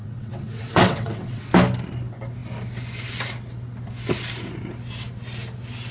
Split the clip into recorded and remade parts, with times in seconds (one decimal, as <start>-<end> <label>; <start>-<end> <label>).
0.0-1.5 remade; 1.5-5.9 recorded